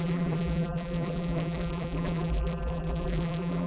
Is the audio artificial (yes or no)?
yes